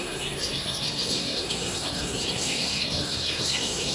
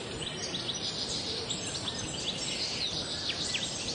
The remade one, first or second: first